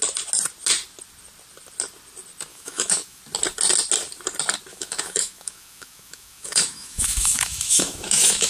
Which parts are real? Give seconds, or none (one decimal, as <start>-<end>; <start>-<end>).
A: 0.0-2.5; 3.2-4.7